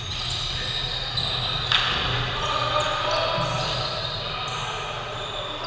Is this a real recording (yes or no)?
yes